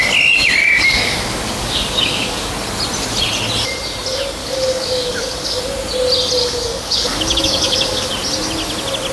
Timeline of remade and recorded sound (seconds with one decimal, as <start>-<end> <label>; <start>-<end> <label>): 0.0-0.6 recorded; 0.6-2.5 remade; 2.5-4.4 recorded; 4.4-5.6 remade; 5.6-6.4 recorded; 6.4-8.1 remade; 8.1-9.1 recorded